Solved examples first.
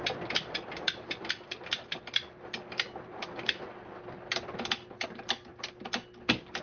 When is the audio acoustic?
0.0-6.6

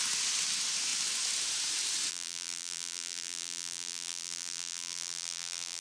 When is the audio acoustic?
0.0-2.1

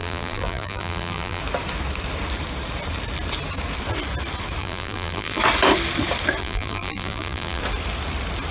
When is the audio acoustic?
1.4-4.6; 5.4-6.4; 7.6-8.5